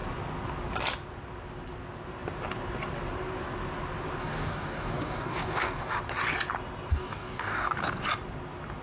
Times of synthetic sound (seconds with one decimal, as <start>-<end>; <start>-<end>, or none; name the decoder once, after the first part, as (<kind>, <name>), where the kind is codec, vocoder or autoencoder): 4.2-5.9 (codec, DAC); 6.9-7.7